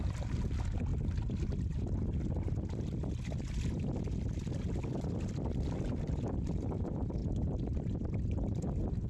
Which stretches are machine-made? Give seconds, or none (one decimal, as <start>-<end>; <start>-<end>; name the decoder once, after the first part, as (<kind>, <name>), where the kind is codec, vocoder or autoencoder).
none